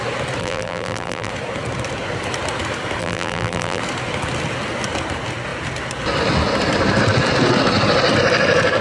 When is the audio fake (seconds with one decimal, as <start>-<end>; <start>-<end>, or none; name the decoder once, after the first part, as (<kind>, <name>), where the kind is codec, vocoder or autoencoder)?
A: 0.4-1.3 (vocoder, BigVGAN v2); 3.0-3.8

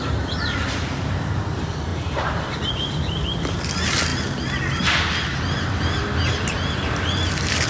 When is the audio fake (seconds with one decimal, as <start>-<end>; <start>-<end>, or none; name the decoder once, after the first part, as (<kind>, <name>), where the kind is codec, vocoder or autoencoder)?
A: 1.9-2.4 (vocoder, BigVGAN v2)

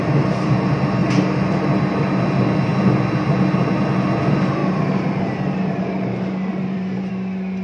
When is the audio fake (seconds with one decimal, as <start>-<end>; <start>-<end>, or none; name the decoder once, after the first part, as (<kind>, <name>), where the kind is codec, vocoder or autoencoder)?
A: 1.0-2.2 (vocoder, BigVGAN v2); 4.6-7.1

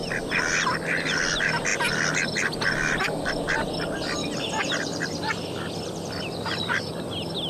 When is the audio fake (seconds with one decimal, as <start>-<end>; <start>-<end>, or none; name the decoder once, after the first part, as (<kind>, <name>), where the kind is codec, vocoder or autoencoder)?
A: 4.2-6.9 (vocoder, BigVGAN v2)

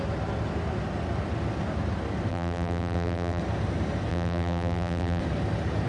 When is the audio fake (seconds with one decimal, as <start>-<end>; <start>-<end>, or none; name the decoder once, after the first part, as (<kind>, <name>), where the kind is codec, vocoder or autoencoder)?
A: 2.3-3.4 (vocoder, BigVGAN v2); 4.1-5.2